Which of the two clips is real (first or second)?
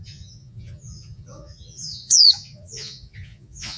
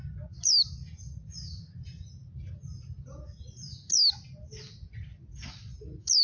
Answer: second